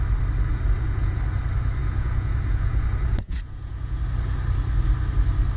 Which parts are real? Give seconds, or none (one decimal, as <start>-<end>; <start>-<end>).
0.0-0.5; 1.2-1.8; 4.0-5.6